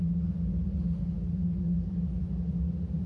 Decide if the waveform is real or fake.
real